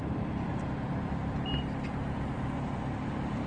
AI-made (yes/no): no